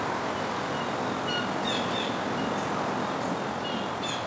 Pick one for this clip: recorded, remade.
recorded